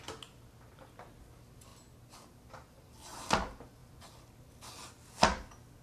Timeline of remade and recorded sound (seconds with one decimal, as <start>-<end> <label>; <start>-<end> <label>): 0.0-5.8 recorded